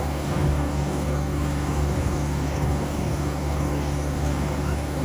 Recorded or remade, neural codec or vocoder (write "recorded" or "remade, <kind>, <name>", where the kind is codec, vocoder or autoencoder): remade, codec, DAC